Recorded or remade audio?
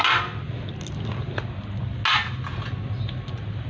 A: recorded